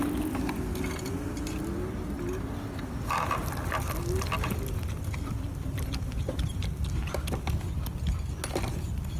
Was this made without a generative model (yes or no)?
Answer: yes